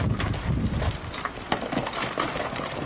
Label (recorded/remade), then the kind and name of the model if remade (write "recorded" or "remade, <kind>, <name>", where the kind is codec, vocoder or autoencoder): recorded